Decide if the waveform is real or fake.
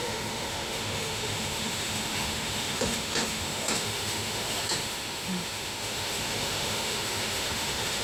fake